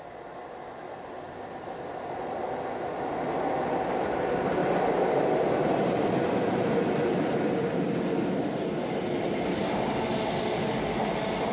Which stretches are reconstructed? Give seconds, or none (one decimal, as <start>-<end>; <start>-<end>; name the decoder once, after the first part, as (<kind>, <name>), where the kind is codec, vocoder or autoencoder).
4.6-9.6 (vocoder, BigVGAN v2)